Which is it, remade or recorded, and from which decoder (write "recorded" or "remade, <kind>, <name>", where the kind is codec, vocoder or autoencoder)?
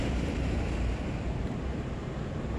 remade, vocoder, BigVGAN v2